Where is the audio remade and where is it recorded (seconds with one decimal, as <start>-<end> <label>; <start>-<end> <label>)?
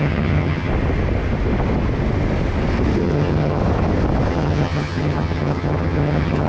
0.0-0.7 remade; 0.7-3.0 recorded; 3.0-3.6 remade; 3.6-4.3 recorded; 4.3-6.5 remade